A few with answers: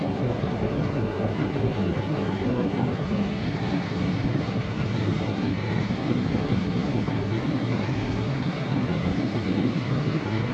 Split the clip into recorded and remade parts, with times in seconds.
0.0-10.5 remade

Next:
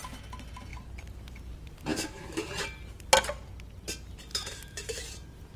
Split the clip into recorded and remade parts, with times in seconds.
0.0-1.9 recorded; 1.9-2.5 remade; 2.5-4.3 recorded; 4.3-5.0 remade; 5.0-5.6 recorded